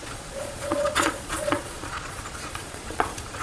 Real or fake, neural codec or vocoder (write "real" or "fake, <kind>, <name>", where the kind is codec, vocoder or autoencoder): fake, vocoder, Vocos